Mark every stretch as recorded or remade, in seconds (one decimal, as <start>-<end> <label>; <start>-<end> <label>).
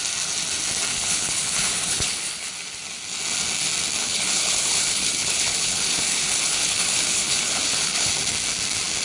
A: 0.0-0.9 recorded; 0.9-2.5 remade; 2.5-4.0 recorded; 4.0-8.1 remade; 8.1-9.0 recorded